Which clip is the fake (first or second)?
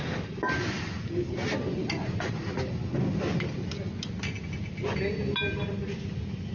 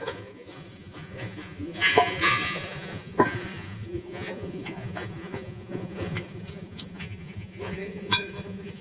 second